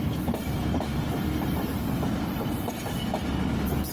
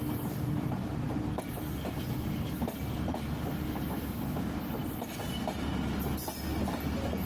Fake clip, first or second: first